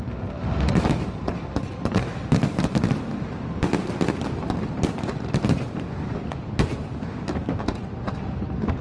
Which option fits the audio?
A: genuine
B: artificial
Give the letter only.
A